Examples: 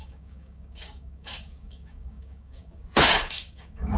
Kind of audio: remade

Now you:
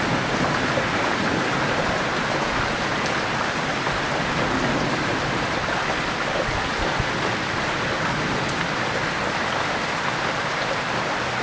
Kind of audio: recorded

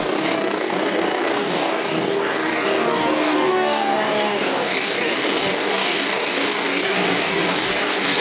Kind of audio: remade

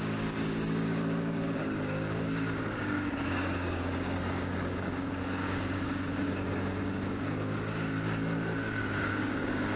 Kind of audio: remade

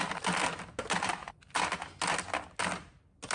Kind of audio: recorded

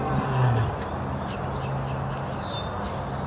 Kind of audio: recorded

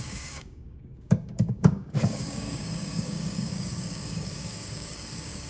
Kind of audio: remade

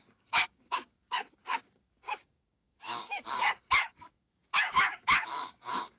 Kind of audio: remade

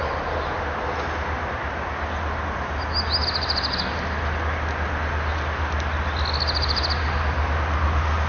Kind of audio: recorded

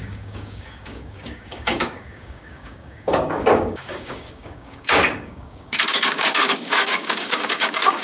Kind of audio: remade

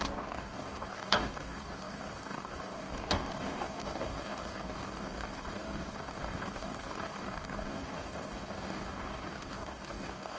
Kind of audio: remade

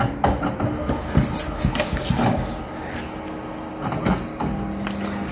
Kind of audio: recorded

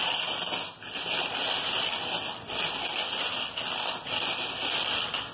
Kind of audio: recorded